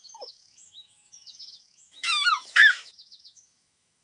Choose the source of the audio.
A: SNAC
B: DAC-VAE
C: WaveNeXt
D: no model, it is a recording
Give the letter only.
B